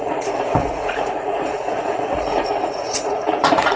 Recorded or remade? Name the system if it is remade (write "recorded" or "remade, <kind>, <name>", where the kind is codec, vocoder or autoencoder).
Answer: remade, vocoder, Vocos